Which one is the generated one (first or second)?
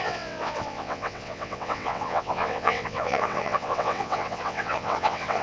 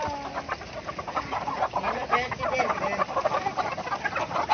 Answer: first